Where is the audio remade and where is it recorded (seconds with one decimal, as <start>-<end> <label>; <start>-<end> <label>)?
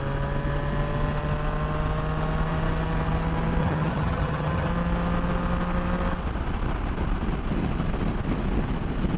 0.0-3.6 recorded; 3.6-4.7 remade; 4.7-9.2 recorded